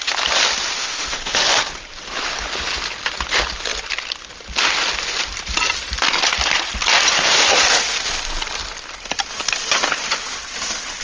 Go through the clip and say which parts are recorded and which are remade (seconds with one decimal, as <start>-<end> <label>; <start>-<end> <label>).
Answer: 0.0-0.8 recorded; 0.8-1.4 remade; 1.4-11.0 recorded